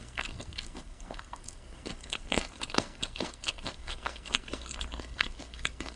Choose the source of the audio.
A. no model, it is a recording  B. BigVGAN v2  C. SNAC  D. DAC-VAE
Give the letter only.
C